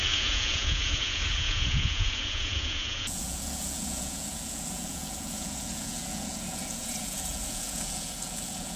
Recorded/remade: remade